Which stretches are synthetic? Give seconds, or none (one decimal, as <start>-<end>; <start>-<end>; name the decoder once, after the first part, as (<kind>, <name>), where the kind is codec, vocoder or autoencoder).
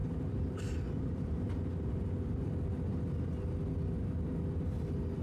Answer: 0.0-2.5 (vocoder, BigVGAN v2)